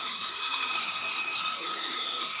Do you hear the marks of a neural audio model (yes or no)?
yes